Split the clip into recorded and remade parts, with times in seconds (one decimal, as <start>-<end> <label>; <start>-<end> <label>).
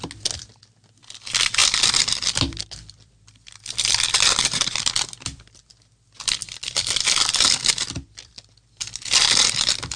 0.0-1.6 recorded; 1.6-4.0 remade; 4.0-10.0 recorded